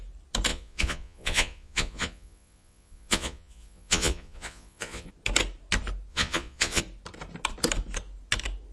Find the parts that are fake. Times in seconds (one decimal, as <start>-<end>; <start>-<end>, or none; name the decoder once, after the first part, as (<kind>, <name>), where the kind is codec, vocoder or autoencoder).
0.5-5.1 (vocoder, Vocos); 6.1-6.8